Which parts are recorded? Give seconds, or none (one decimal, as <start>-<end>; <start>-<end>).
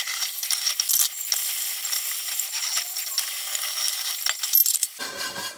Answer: 0.0-4.6